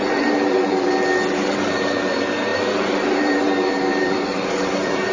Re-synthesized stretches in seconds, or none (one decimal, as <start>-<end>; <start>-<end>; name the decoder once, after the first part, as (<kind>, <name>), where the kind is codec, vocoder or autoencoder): 0.0-0.9 (vocoder, BigVGAN v2); 1.5-5.1